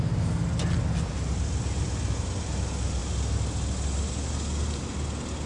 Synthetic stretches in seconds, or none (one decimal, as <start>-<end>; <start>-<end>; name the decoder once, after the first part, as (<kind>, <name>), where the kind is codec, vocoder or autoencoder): none